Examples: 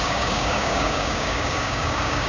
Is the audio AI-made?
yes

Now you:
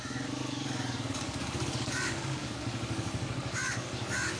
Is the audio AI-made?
yes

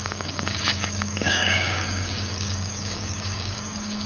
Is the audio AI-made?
yes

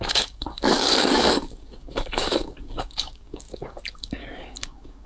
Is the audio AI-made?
yes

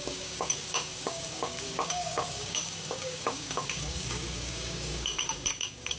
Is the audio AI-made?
yes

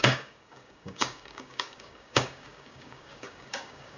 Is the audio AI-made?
yes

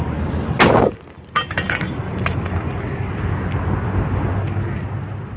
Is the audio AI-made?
no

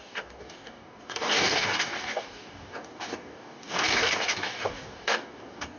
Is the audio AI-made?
yes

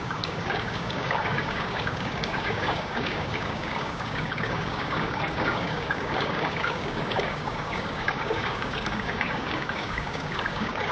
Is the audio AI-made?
yes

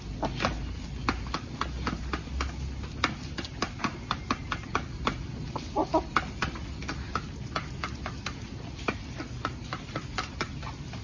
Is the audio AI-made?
no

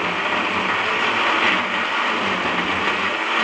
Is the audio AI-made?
no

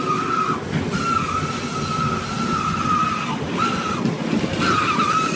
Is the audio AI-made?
no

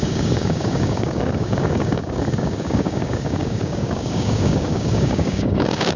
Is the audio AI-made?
yes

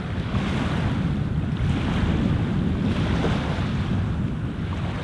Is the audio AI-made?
no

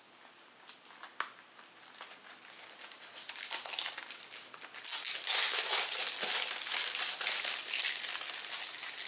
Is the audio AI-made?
no